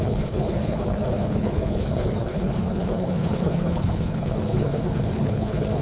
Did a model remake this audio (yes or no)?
yes